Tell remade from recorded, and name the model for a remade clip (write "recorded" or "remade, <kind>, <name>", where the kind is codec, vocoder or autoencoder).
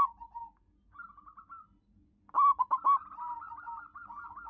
recorded